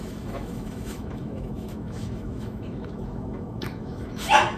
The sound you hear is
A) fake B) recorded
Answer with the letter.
A